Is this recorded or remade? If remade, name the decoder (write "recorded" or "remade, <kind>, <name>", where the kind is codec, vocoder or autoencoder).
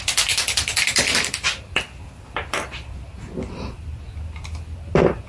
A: recorded